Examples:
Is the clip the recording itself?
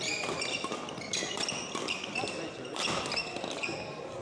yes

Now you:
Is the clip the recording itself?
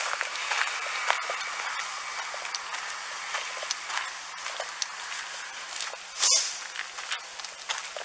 yes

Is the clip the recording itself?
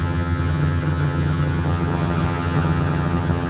no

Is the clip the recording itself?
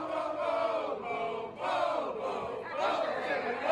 yes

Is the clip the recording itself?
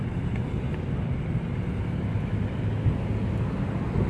yes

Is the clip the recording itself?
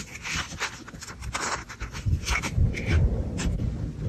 yes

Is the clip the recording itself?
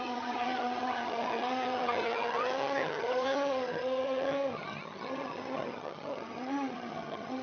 no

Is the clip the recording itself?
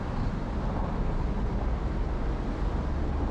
yes